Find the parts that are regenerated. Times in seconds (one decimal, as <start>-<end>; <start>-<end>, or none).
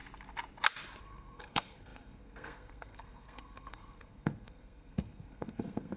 1.0-6.0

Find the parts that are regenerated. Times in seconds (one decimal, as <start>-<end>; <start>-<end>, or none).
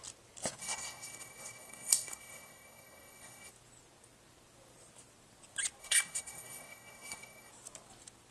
0.6-3.5; 5.8-7.5